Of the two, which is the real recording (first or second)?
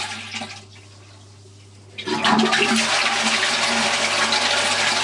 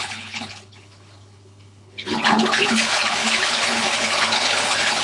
first